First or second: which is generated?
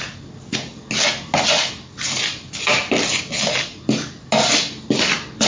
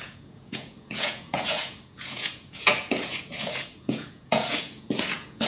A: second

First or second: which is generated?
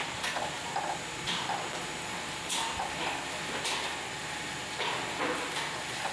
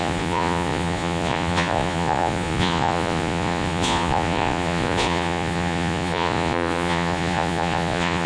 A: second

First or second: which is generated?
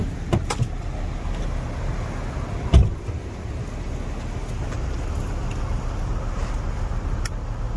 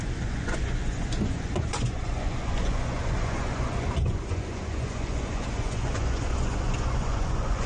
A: second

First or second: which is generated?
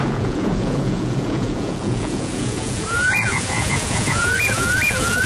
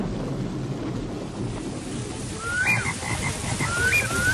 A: first